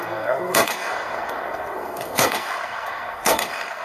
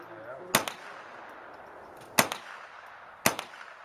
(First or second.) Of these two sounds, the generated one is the first